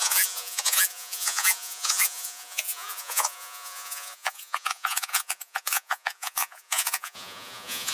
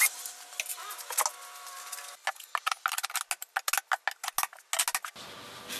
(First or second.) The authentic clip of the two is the second